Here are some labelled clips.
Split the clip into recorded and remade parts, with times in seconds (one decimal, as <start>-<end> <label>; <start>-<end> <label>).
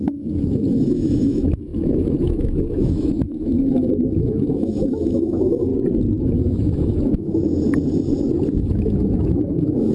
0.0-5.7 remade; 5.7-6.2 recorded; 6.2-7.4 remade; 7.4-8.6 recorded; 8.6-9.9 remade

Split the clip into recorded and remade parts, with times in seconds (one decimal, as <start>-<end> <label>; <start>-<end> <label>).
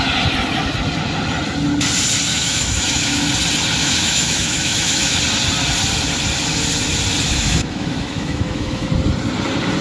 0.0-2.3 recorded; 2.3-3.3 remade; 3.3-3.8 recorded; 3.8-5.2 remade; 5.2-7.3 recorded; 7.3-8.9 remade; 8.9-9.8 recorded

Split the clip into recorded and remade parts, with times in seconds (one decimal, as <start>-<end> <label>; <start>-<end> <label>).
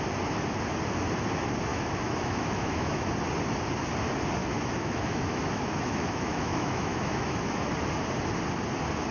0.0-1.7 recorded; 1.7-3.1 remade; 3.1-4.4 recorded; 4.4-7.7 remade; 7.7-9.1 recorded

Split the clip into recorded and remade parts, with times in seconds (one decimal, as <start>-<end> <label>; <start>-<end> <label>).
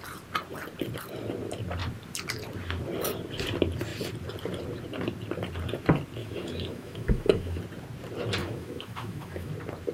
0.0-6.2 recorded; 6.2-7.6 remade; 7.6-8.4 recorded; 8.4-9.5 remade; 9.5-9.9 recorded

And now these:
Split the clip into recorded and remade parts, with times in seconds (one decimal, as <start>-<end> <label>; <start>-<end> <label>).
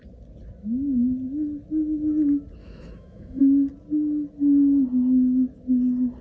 0.0-2.6 recorded; 2.6-3.4 remade; 3.4-6.2 recorded